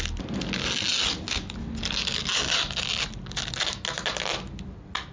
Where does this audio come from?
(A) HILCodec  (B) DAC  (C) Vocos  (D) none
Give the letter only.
D